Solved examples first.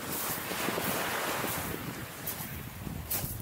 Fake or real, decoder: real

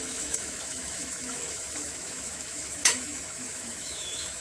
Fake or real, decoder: fake, autoencoder, DAC-VAE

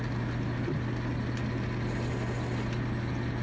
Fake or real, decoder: real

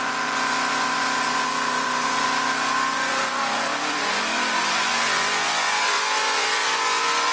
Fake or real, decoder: fake, vocoder, Vocos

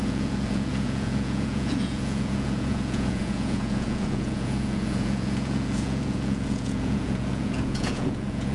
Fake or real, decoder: fake, vocoder, Vocos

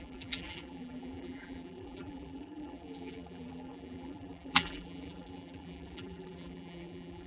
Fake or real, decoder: fake, vocoder, BigVGAN v2